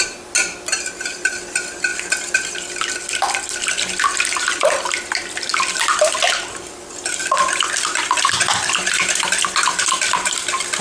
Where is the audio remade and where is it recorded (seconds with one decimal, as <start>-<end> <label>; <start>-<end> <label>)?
0.0-5.5 recorded; 5.5-6.1 remade; 6.1-10.8 recorded